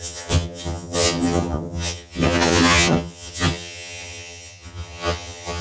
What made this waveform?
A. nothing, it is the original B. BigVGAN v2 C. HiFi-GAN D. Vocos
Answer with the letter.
C